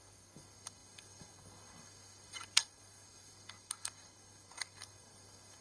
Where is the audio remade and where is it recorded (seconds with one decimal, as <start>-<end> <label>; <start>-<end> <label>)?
0.0-5.6 remade